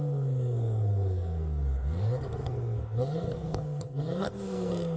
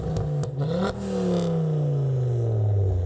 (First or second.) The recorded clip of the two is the second